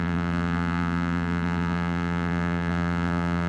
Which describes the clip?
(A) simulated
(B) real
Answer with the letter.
A